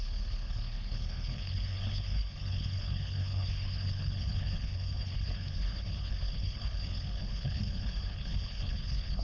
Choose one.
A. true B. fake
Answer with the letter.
B